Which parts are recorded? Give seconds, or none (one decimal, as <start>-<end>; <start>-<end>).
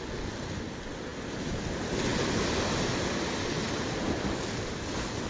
0.0-5.3